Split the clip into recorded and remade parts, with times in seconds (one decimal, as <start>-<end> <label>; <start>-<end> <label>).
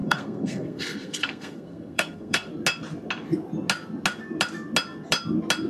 0.0-2.5 remade; 2.5-5.7 recorded